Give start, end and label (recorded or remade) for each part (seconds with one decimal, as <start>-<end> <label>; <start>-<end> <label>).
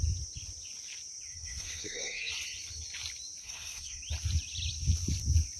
0.0-1.3 recorded; 1.3-2.3 remade; 2.3-3.4 recorded; 3.4-4.0 remade; 4.0-5.6 recorded